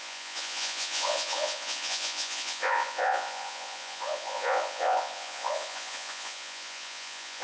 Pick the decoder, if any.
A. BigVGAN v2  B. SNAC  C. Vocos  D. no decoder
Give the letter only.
C